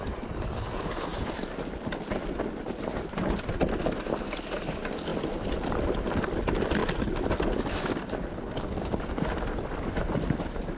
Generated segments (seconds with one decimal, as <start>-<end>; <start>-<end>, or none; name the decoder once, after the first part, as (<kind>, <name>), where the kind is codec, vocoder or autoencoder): 0.0-1.1 (vocoder, BigVGAN v2); 3.0-5.1; 6.2-6.8; 9.5-10.8